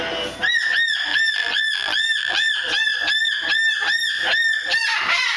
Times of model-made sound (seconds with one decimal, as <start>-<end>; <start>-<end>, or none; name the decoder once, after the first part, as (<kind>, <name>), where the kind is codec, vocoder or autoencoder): 1.1-2.5 (vocoder, BigVGAN v2)